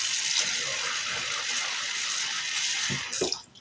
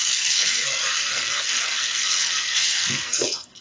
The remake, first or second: second